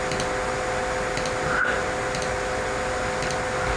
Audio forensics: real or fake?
real